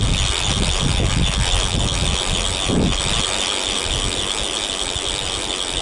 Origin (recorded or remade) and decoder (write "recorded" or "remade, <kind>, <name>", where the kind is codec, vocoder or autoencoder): recorded